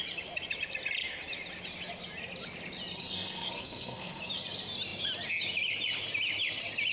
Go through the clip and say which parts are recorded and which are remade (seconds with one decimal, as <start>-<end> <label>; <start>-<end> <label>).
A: 0.0-3.0 recorded; 3.0-4.2 remade; 4.2-6.9 recorded